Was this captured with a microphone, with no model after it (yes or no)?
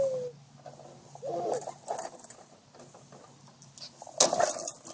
yes